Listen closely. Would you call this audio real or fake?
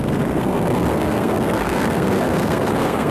fake